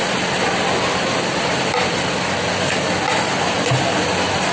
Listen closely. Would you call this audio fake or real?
real